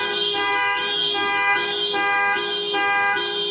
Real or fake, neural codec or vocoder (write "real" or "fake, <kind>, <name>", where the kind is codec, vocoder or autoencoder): fake, autoencoder, DAC-VAE